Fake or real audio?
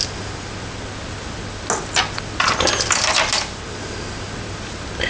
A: real